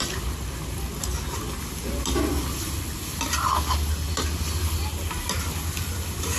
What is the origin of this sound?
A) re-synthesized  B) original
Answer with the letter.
B